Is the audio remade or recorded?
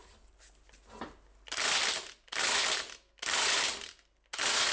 recorded